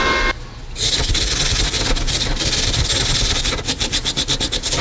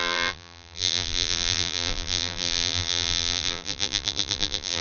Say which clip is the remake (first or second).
second